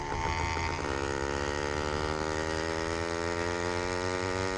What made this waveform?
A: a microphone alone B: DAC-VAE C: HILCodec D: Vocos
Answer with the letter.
A